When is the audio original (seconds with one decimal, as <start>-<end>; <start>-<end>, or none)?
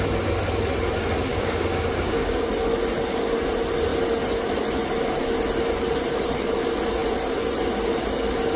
0.0-1.3; 2.5-8.6